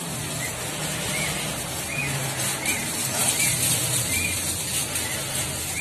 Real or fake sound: real